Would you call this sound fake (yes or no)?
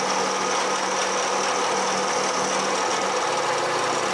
no